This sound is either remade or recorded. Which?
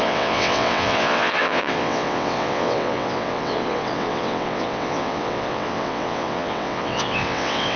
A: remade